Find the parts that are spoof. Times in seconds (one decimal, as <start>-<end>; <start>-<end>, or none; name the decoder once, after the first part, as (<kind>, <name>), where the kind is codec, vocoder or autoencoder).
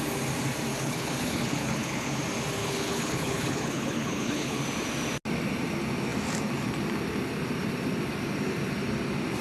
0.7-2.2 (codec, HILCodec); 2.6-4.6